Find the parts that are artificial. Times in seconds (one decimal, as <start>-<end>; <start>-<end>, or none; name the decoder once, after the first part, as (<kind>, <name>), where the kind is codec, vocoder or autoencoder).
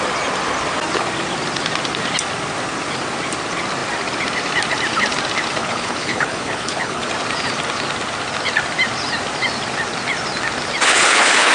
5.6-7.1 (codec, HILCodec); 10.9-11.5